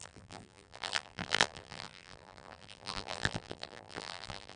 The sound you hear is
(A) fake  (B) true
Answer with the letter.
A